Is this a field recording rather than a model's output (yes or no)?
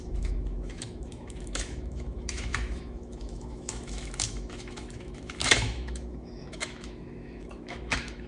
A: no